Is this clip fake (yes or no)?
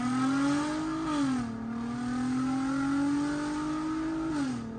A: no